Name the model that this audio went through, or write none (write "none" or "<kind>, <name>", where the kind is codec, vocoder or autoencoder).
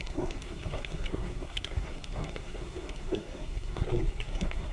codec, SNAC